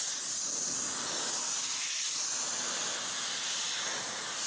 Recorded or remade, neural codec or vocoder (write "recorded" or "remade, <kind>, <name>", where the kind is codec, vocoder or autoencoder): recorded